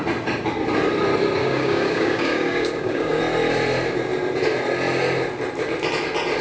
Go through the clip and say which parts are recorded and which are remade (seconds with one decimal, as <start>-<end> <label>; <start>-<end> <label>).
0.0-1.4 recorded; 1.4-3.2 remade; 3.2-6.4 recorded